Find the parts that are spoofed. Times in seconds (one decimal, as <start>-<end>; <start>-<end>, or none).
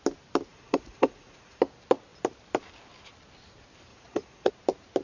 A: 0.5-1.6; 3.9-4.5